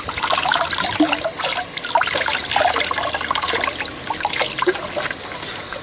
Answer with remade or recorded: recorded